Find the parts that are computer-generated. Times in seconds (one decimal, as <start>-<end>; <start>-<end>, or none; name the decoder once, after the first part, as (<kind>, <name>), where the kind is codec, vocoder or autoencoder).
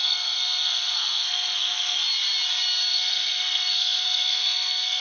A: 0.0-2.0 (codec, SNAC); 2.9-5.0